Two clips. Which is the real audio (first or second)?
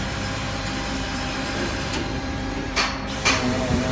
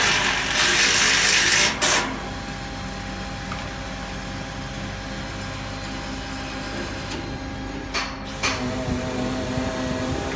second